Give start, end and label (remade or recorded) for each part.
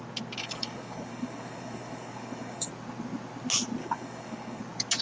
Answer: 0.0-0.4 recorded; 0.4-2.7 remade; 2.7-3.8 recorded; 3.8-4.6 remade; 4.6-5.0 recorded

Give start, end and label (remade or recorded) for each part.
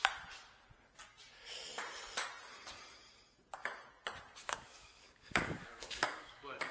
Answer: 0.0-4.4 recorded; 4.4-6.7 remade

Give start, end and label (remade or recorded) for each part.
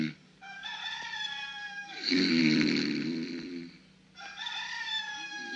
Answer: 0.0-0.8 remade; 0.8-1.7 recorded; 1.7-2.4 remade; 2.4-5.0 recorded; 5.0-5.6 remade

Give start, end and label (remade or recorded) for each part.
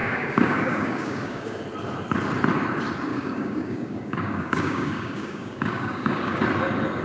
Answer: 0.0-1.6 remade; 1.6-3.1 recorded; 3.1-6.4 remade; 6.4-7.0 recorded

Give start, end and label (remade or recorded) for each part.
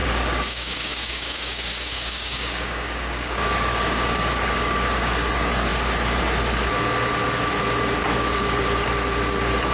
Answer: 0.0-5.3 remade; 5.3-9.7 recorded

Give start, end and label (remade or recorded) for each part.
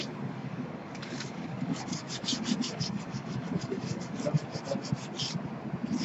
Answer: 0.0-4.4 remade; 4.4-6.0 recorded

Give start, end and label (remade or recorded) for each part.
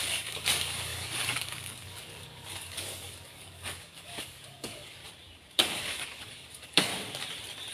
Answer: 0.0-5.0 remade; 5.0-5.5 recorded; 5.5-6.9 remade; 6.9-7.7 recorded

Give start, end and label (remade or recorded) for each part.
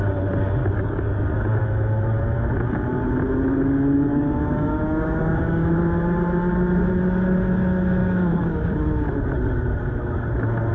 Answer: 0.0-0.6 recorded; 0.6-1.2 remade; 1.2-4.1 recorded; 4.1-5.7 remade; 5.7-8.0 recorded; 8.0-9.1 remade; 9.1-10.7 recorded